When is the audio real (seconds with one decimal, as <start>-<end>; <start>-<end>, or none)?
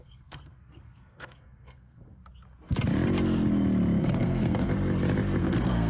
2.2-4.0; 4.7-5.4